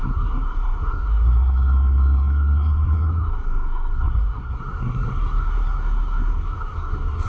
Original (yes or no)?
no